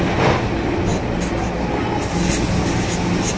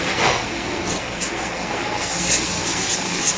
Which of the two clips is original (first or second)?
first